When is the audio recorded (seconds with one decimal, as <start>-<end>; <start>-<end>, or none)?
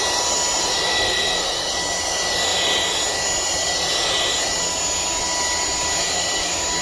0.0-0.9; 1.7-6.8